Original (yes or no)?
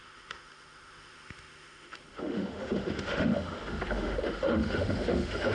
no